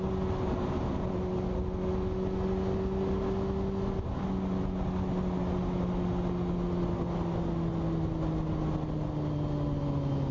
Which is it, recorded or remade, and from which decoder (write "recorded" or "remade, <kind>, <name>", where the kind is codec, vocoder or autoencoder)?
recorded